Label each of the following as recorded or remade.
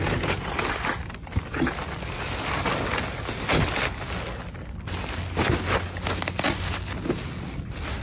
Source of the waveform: recorded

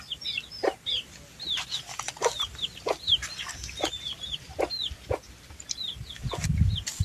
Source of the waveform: recorded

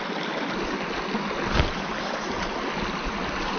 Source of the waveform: recorded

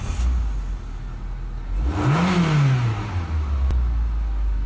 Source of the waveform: recorded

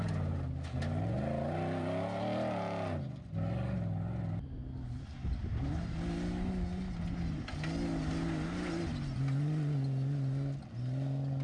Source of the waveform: recorded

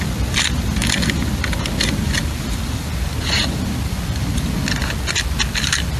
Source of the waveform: recorded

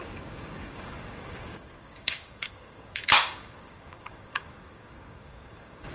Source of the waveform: remade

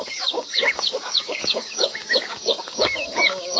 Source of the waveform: remade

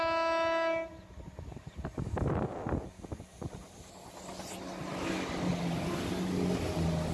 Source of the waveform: recorded